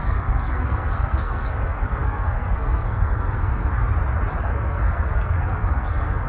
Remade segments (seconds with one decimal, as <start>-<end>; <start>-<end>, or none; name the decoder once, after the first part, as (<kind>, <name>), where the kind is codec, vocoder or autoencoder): 0.0-3.8 (codec, SNAC); 4.4-6.3